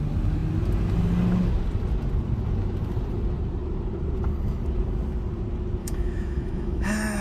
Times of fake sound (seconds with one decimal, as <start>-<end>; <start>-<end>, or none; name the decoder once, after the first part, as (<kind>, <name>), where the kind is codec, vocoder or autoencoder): 5.8-7.2 (autoencoder, DAC-VAE)